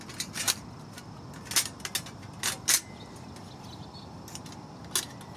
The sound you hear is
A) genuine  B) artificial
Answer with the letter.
A